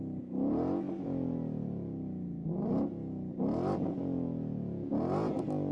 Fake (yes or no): no